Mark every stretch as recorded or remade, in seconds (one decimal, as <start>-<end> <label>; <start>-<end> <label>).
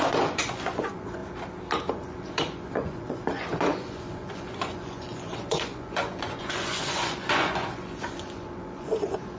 0.0-1.2 remade; 1.2-1.9 recorded; 1.9-9.4 remade